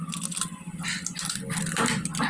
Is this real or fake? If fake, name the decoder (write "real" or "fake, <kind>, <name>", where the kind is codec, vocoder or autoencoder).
real